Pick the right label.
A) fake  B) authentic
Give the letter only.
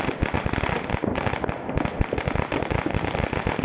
B